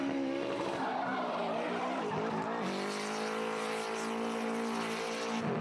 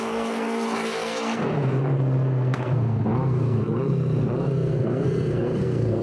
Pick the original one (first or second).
first